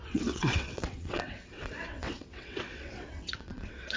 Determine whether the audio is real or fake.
fake